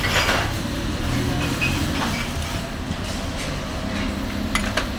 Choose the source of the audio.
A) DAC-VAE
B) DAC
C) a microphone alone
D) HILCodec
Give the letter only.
C